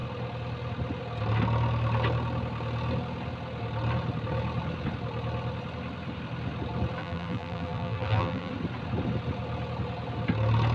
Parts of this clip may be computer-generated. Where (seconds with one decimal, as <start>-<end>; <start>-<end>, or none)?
7.0-8.5